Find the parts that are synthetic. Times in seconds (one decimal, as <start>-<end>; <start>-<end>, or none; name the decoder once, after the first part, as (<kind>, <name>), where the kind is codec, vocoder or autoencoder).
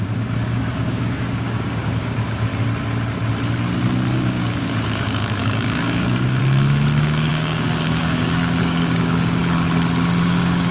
0.0-2.5 (codec, DAC); 4.1-9.4; 10.2-10.7